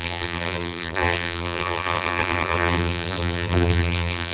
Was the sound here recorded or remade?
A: remade